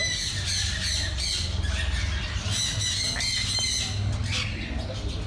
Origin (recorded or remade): recorded